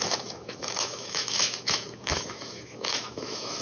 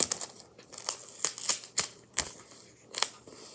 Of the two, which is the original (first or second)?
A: second